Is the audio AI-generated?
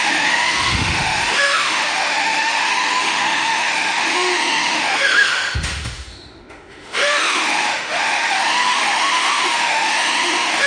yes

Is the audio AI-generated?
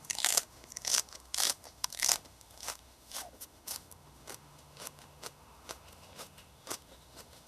yes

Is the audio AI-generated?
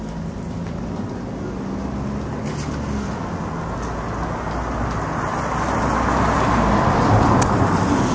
no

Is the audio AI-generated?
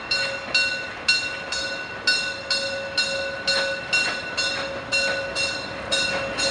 no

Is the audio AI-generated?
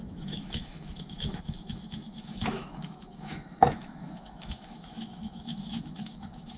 yes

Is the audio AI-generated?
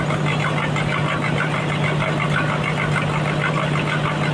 no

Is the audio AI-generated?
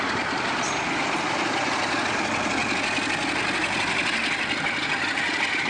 no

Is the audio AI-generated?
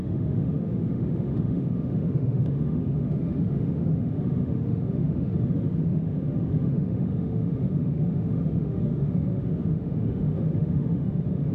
yes